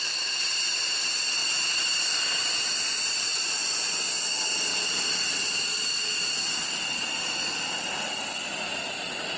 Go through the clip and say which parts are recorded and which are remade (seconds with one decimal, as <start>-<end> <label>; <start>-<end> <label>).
0.0-3.3 recorded; 3.3-4.0 remade; 4.0-9.4 recorded